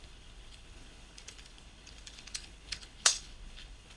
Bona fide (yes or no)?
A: no